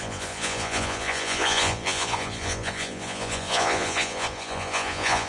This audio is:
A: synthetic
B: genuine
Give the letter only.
A